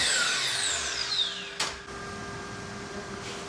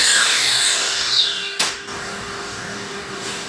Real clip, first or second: first